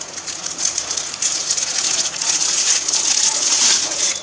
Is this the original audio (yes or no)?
no